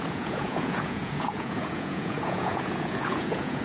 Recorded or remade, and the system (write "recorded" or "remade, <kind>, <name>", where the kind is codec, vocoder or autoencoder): remade, vocoder, Vocos